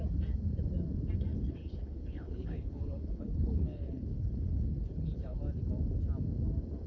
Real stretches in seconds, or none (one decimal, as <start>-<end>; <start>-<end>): 0.0-1.3; 5.4-6.9